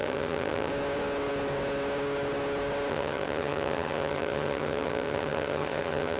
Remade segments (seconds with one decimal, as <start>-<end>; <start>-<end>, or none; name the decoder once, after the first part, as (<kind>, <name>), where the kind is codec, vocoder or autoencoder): 0.0-0.7 (vocoder, HiFi-GAN); 2.9-6.2